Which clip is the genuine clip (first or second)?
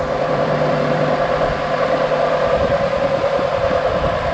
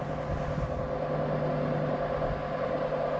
second